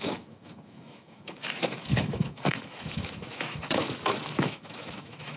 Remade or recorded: remade